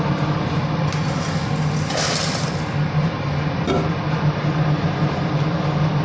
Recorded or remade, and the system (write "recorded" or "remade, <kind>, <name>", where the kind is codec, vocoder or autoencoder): recorded